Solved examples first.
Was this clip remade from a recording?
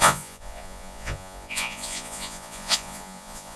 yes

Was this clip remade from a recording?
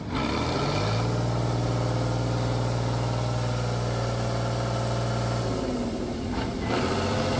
no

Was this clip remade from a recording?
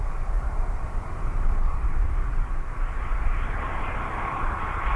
yes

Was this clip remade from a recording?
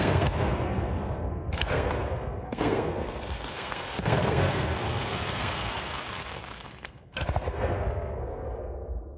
yes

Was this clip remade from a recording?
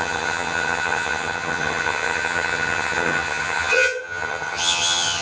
yes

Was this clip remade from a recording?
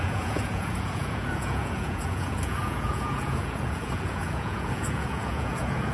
yes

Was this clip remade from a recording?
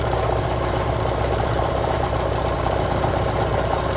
yes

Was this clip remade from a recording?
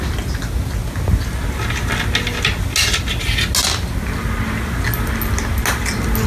no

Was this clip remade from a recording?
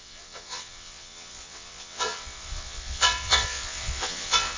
yes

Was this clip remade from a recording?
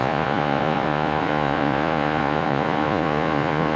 yes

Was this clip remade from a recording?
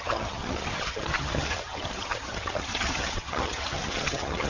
yes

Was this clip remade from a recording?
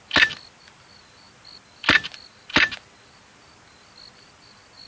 no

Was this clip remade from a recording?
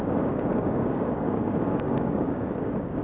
yes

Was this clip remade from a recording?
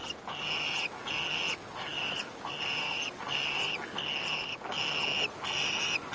no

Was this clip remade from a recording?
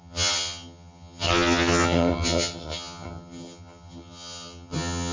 yes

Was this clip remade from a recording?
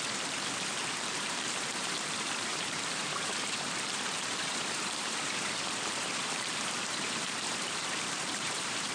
yes